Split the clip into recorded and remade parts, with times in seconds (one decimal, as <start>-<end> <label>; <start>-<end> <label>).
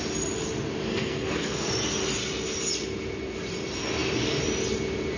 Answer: 0.0-0.9 recorded; 0.9-1.7 remade; 1.7-5.2 recorded